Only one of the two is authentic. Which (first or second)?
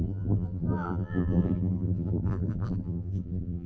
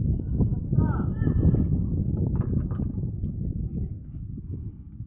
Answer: second